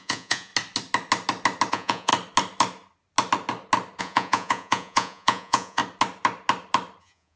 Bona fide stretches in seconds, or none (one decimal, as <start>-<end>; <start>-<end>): 0.5-1.7; 2.1-4.0; 5.8-7.0